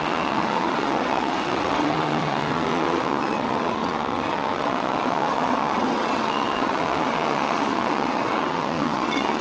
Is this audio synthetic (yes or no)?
yes